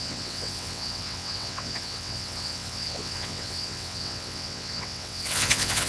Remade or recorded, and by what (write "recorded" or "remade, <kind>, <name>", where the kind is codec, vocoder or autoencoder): remade, vocoder, WaveNeXt